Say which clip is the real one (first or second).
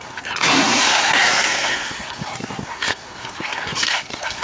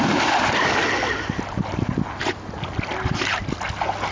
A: second